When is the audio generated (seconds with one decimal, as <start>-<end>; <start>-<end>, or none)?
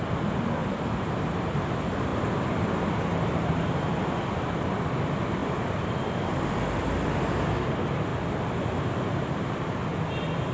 0.6-1.3; 8.1-9.5